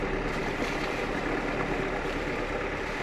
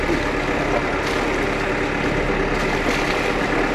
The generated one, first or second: first